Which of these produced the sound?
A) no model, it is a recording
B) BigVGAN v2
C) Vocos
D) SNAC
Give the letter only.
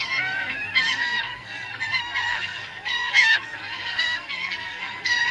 D